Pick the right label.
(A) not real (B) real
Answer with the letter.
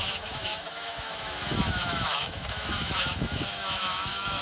A